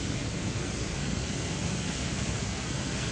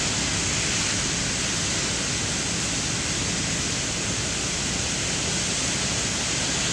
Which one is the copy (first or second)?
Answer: first